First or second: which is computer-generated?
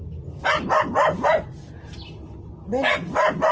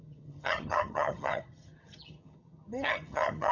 second